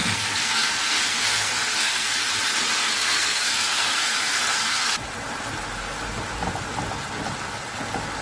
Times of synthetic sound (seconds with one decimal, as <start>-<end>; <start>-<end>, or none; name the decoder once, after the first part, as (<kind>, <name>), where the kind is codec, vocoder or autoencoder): 0.0-2.3 (codec, SNAC); 2.8-4.9